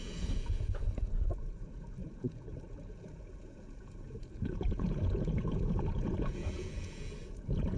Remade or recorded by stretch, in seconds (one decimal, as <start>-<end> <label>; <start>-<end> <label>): 0.0-7.8 remade

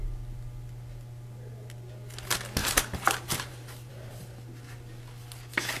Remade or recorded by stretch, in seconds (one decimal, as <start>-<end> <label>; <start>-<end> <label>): 0.0-2.6 recorded; 2.6-3.9 remade; 3.9-5.8 recorded